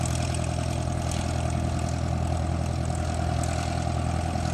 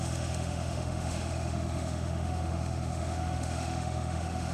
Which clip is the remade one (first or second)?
second